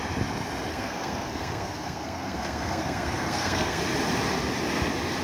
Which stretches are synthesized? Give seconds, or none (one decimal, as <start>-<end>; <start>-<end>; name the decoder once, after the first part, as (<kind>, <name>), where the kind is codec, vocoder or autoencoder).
0.7-3.8 (codec, SNAC)